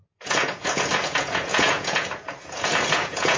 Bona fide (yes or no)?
no